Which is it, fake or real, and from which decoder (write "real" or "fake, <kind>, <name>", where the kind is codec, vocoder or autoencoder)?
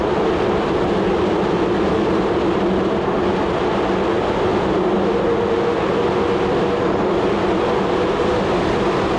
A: real